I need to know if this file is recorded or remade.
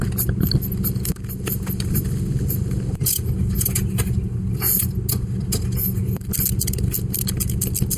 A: recorded